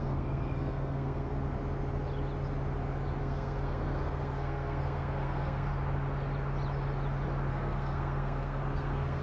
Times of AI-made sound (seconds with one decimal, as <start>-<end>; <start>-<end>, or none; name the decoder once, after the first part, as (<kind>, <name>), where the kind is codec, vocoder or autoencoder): 0.0-1.3 (codec, SNAC); 3.2-5.7; 7.5-9.2